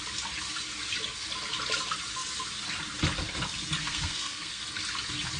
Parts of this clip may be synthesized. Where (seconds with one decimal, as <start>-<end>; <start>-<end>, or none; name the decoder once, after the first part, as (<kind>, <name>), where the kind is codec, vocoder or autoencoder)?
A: 3.8-4.6 (codec, SNAC)